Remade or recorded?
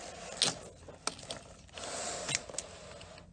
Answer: recorded